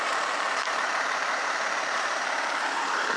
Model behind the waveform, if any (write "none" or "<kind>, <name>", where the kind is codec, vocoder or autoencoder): vocoder, BigVGAN v2